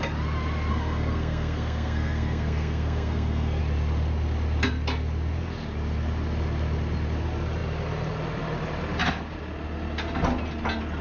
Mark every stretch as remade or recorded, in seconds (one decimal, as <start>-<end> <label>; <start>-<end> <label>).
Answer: 0.0-0.7 recorded; 0.7-3.6 remade; 3.6-11.0 recorded